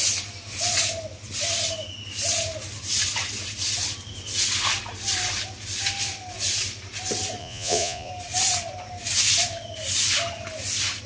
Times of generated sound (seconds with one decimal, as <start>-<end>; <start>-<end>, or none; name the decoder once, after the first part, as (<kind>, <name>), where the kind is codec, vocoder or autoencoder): 7.4-8.1 (vocoder, Vocos)